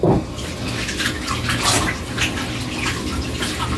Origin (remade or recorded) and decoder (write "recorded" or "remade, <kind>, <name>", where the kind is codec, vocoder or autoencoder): recorded